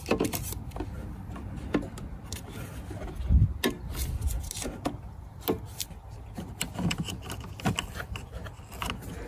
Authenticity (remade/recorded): recorded